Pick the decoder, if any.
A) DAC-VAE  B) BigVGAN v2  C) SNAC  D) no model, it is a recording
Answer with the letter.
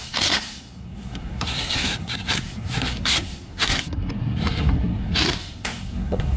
C